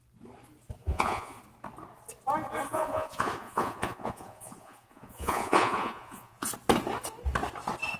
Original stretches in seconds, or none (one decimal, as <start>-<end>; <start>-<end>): 0.0-0.8; 1.4-2.7; 6.5-8.0